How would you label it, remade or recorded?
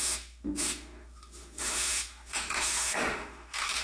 remade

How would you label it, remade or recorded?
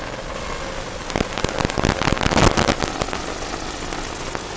recorded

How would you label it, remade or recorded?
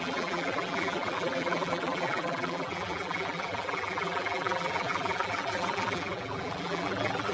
remade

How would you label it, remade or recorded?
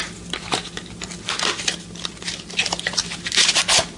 recorded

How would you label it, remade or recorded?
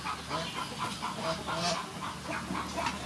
recorded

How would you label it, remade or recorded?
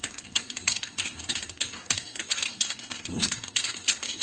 remade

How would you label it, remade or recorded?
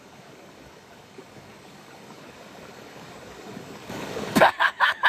remade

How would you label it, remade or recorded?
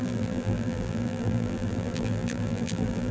remade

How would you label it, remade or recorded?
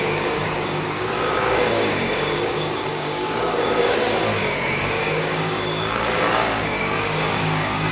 remade